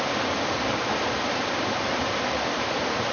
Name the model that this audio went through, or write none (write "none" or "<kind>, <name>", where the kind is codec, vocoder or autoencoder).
none